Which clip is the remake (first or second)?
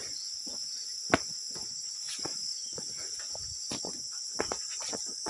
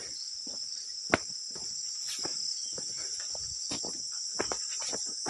first